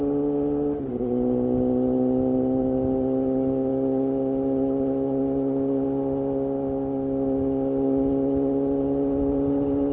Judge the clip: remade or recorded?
recorded